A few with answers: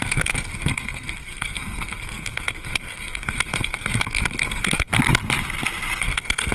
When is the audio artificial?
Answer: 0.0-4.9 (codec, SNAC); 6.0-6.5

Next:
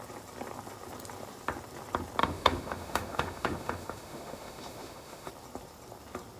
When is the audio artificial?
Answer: 2.2-5.3 (autoencoder, DAC-VAE)